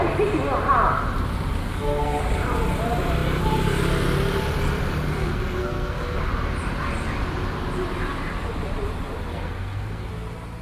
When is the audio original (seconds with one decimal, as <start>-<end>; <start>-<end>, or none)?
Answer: 0.0-1.6; 2.2-5.2; 6.2-9.3; 10.1-10.6